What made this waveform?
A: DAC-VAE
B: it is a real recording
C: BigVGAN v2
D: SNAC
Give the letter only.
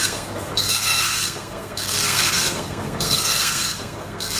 D